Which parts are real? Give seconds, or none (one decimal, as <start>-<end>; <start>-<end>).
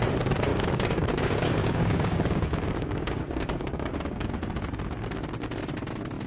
0.0-0.5; 4.3-6.3